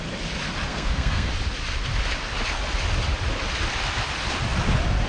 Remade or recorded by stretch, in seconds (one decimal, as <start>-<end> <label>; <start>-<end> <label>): 0.0-0.7 recorded; 0.7-1.3 remade; 1.3-5.1 recorded